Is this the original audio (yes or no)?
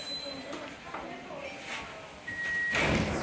yes